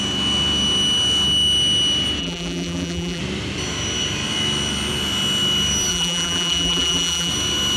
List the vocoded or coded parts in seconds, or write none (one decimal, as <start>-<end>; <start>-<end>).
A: 2.2-3.2; 5.9-7.3